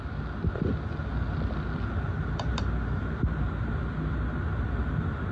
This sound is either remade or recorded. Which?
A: recorded